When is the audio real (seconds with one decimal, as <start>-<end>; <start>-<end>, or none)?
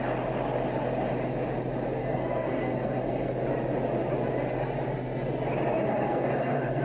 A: 0.0-2.0; 3.3-5.7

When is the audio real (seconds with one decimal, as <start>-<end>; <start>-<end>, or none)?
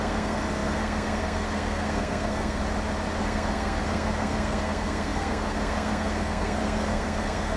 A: 2.6-3.2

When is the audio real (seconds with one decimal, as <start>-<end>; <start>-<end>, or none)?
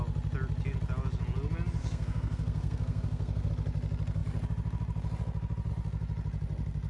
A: 0.0-1.8; 3.5-6.9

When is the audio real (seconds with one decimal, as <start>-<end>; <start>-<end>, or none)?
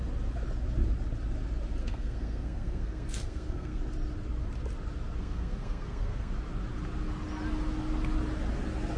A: 0.0-1.8; 3.8-5.2; 6.3-9.0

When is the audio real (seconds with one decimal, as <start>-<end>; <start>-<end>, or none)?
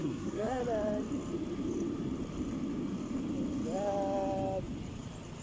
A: 0.6-5.4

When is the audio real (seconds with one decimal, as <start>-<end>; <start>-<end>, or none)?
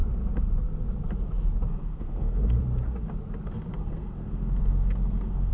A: 0.0-1.7; 2.6-3.7